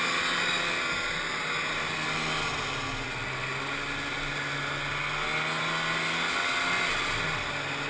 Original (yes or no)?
yes